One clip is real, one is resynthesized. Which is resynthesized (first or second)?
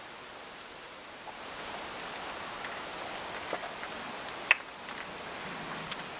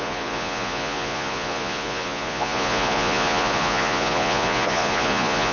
second